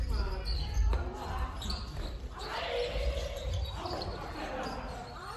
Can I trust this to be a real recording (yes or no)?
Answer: yes